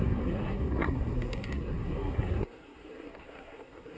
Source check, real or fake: fake